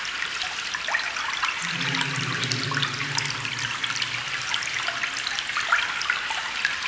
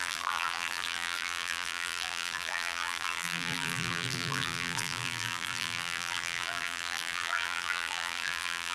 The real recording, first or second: first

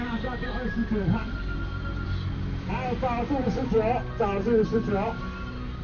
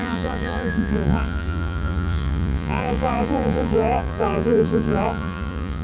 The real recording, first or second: first